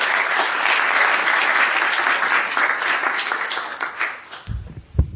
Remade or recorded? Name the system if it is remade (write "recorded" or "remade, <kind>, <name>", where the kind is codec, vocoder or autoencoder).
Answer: recorded